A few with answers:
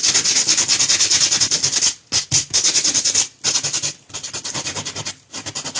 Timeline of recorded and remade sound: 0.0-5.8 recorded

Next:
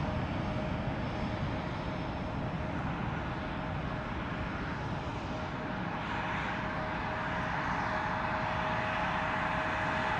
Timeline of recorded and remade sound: 0.0-10.2 recorded

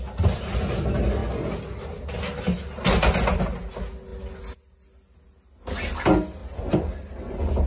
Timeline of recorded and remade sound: 0.0-7.7 recorded

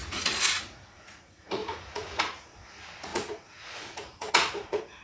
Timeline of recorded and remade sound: 0.0-5.0 remade

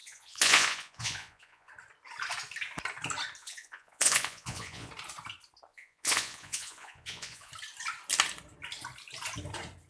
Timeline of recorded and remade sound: 0.0-1.7 remade; 1.7-3.4 recorded; 3.4-4.9 remade; 4.9-5.7 recorded; 5.7-7.5 remade; 7.5-9.9 recorded

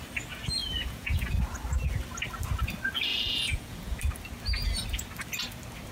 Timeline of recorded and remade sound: 0.0-0.6 recorded; 0.6-1.3 remade; 1.3-3.1 recorded; 3.1-4.0 remade; 4.0-5.9 recorded